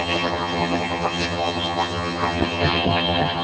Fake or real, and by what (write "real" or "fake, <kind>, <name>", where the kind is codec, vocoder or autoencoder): fake, vocoder, HiFi-GAN